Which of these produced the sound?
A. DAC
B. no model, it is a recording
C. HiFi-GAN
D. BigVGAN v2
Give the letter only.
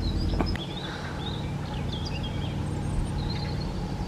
B